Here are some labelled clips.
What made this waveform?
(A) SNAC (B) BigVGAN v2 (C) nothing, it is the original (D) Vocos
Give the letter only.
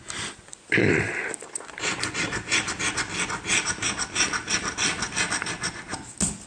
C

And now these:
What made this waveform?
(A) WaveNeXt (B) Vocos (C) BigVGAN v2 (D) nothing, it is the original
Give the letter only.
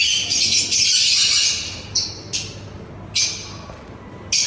D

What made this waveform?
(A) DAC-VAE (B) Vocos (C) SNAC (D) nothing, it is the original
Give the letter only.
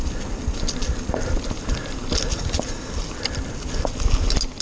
D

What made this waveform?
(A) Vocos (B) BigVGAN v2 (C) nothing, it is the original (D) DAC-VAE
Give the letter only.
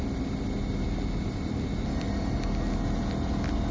C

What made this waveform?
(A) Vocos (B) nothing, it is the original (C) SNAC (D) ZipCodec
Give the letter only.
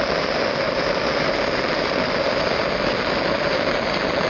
B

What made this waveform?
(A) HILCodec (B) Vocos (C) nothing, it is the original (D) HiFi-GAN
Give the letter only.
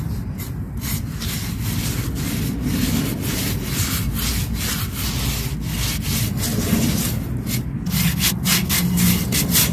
C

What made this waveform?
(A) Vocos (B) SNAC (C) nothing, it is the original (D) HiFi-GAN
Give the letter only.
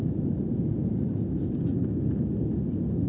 C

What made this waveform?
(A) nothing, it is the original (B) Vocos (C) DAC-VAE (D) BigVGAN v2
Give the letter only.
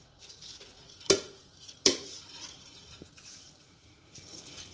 B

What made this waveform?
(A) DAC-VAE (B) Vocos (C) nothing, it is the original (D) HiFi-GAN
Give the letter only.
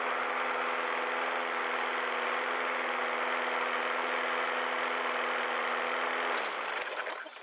C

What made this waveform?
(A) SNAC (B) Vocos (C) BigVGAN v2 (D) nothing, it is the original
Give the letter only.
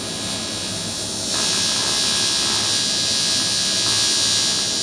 D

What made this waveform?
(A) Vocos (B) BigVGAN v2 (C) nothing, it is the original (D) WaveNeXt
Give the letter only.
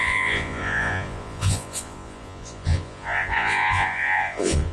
A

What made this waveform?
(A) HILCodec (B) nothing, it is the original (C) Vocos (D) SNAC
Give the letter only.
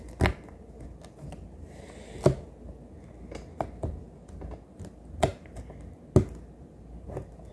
B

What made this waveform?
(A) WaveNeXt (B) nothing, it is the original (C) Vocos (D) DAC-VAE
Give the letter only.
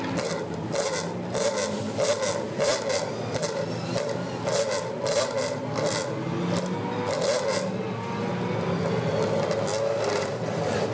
B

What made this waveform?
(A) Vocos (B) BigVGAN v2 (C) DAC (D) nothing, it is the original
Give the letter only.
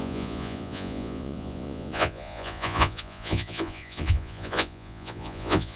A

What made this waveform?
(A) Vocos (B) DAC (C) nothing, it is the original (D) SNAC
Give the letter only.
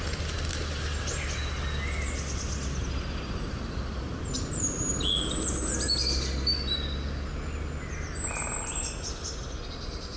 C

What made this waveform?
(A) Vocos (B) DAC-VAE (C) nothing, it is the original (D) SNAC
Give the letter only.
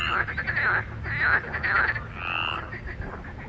C